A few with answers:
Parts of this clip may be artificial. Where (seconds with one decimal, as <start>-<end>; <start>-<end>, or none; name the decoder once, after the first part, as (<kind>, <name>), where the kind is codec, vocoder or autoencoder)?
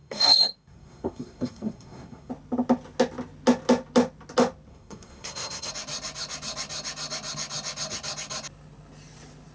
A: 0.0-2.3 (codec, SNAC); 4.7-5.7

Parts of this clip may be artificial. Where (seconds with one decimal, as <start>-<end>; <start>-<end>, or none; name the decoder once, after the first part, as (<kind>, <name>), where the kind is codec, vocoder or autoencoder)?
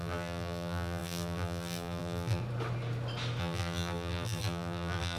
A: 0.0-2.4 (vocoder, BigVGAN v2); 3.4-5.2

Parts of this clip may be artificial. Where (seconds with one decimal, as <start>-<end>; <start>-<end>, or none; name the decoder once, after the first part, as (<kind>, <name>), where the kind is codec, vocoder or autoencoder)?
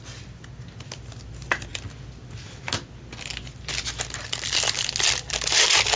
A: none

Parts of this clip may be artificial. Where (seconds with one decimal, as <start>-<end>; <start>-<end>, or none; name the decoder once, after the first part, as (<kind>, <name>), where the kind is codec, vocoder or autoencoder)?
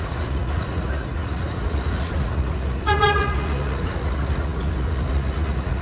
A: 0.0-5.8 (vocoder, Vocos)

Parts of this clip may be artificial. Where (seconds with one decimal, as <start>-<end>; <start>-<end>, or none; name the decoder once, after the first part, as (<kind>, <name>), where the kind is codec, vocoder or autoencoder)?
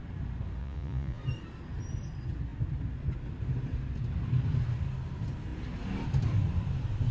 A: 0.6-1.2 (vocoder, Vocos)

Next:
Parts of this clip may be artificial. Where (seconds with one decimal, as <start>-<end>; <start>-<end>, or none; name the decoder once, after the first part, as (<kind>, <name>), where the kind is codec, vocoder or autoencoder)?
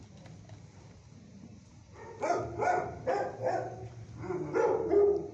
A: none